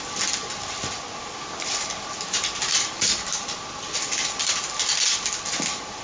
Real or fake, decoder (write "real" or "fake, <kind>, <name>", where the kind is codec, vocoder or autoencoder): real